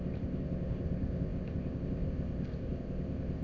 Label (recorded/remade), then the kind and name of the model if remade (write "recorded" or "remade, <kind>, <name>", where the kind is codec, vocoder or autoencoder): remade, codec, ZipCodec